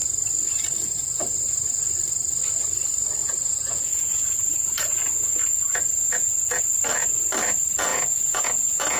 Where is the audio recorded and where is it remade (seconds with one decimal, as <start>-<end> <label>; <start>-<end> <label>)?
0.0-3.2 recorded; 3.2-6.6 remade; 6.6-7.9 recorded; 7.9-9.0 remade